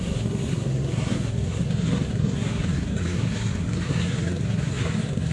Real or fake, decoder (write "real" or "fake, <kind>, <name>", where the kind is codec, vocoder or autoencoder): fake, codec, SNAC